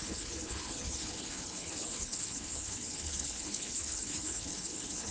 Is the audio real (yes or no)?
no